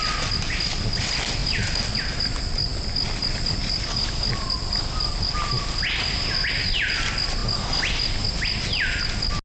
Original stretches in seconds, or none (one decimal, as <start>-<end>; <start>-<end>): 0.0-9.4